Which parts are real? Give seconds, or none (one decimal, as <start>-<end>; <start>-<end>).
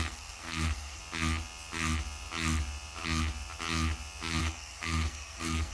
1.0-4.4